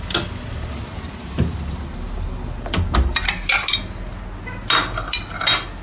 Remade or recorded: recorded